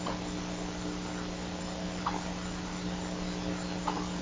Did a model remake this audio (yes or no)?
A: no